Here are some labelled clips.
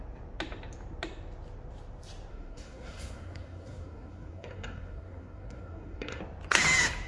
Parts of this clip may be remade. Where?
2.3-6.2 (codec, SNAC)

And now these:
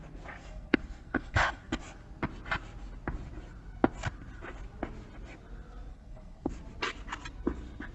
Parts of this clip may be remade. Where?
0.4-1.8 (codec, SNAC); 5.9-6.5

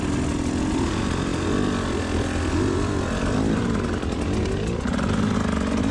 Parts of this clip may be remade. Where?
none

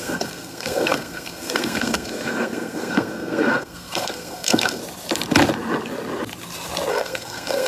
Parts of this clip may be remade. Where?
0.0-4.8 (codec, SNAC); 6.9-7.7

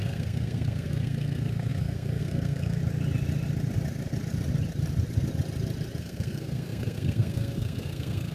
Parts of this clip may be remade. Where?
0.0-2.8 (codec, SNAC); 6.0-8.3